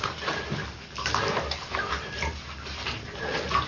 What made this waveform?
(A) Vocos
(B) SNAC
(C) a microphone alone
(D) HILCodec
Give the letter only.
C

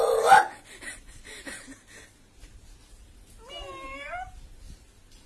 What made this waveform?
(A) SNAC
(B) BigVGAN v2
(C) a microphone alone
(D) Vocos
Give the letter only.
C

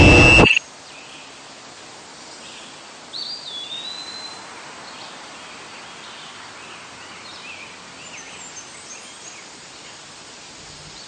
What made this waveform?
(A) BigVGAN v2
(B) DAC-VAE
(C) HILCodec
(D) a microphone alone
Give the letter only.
D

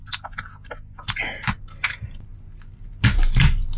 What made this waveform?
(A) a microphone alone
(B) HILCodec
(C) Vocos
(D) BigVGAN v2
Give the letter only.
A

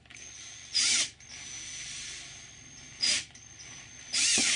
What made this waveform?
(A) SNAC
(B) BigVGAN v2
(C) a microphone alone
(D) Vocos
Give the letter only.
C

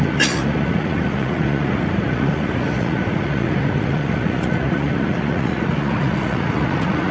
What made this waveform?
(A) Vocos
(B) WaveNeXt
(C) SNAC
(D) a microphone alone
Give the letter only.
A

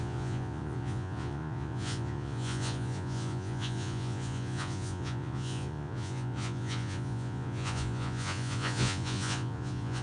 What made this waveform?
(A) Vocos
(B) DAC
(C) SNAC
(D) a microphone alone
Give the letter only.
A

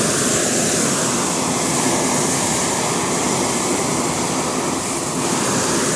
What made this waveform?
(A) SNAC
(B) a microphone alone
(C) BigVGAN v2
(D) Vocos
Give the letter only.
B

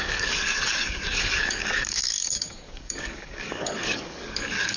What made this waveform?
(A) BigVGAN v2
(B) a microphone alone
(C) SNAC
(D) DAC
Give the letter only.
D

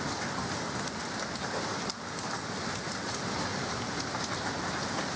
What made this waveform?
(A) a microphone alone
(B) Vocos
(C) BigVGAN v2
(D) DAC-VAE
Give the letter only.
A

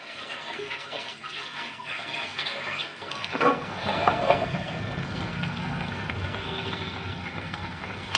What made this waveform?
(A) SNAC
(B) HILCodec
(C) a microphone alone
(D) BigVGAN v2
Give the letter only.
A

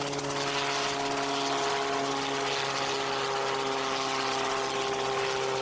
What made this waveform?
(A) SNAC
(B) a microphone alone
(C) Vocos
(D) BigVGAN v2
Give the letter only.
B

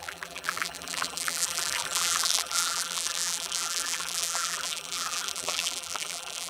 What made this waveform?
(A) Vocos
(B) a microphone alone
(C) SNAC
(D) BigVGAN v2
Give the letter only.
D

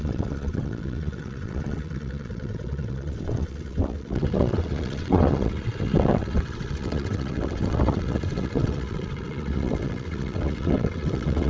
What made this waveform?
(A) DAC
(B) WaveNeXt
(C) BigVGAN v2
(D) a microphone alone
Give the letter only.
B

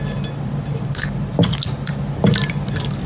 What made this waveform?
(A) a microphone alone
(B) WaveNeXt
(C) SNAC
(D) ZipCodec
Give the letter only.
A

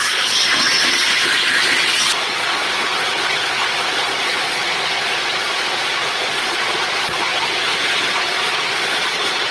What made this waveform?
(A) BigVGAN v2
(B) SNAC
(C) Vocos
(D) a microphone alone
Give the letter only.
C